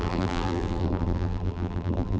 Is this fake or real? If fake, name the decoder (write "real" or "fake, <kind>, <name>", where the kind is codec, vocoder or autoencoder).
fake, vocoder, BigVGAN v2